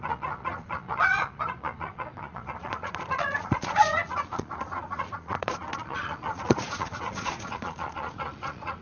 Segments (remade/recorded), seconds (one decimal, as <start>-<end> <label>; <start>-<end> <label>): 0.0-8.8 remade